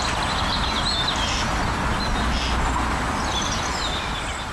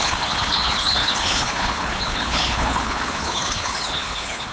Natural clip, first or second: first